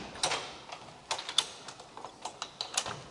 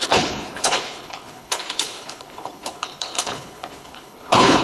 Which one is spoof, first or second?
second